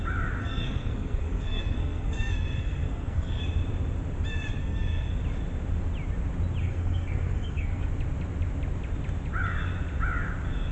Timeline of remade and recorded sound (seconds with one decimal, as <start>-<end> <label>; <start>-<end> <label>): 0.0-0.4 recorded; 0.4-3.4 remade; 3.4-4.6 recorded; 4.6-5.2 remade; 5.2-6.6 recorded; 6.6-7.9 remade; 7.9-10.7 recorded